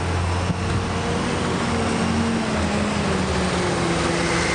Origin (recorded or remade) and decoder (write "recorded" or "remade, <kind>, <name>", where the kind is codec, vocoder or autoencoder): recorded